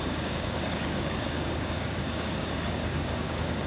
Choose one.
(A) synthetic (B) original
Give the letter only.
A